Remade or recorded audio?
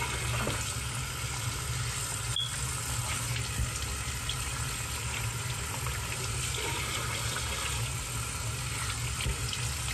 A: recorded